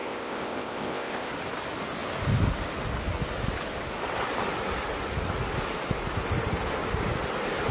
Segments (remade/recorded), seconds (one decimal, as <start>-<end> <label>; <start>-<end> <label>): 0.0-1.3 remade; 1.3-7.7 recorded